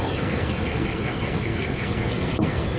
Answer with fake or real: fake